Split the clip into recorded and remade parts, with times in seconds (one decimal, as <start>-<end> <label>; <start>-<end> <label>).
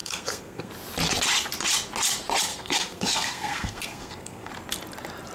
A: 0.0-0.7 remade; 0.7-2.5 recorded; 2.5-4.5 remade; 4.5-5.3 recorded